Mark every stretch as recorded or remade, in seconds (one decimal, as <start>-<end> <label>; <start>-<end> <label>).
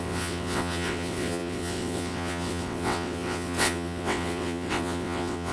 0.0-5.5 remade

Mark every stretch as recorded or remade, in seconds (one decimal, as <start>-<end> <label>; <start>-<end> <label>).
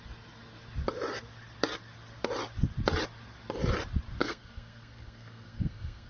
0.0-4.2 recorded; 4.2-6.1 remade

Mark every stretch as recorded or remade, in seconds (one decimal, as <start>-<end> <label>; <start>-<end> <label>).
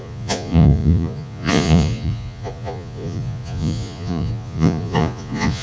0.0-5.6 remade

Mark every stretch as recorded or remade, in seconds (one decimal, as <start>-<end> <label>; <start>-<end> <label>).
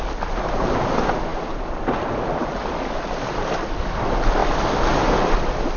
0.0-5.8 recorded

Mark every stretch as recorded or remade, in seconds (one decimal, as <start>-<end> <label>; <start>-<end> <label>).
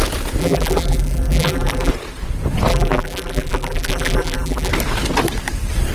0.0-0.4 recorded; 0.4-1.9 remade; 1.9-2.7 recorded; 2.7-4.7 remade; 4.7-5.9 recorded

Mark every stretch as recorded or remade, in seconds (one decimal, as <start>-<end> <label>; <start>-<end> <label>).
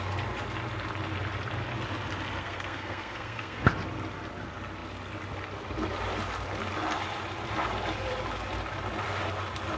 0.0-2.4 recorded; 2.4-3.7 remade; 3.7-9.8 recorded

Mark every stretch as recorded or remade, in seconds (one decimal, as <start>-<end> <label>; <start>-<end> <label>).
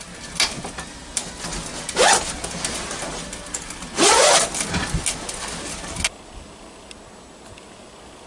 0.0-8.3 recorded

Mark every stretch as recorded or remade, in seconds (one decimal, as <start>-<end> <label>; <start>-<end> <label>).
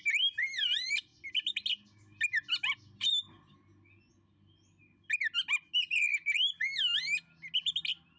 0.0-8.2 recorded